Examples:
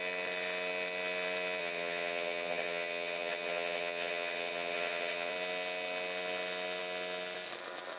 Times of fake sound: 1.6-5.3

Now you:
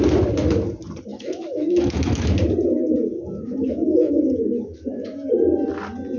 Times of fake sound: 1.1-2.3; 3.1-5.3

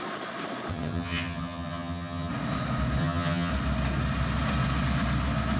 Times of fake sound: 0.7-2.3; 3.0-3.5

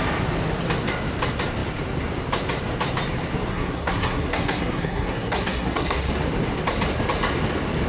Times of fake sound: 3.5-6.1

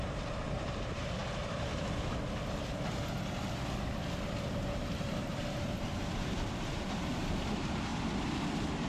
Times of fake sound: 0.0-1.2; 4.9-5.9; 6.7-7.9

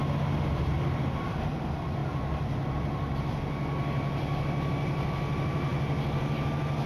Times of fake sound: none

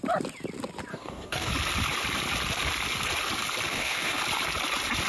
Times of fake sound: 0.9-1.5; 3.7-4.2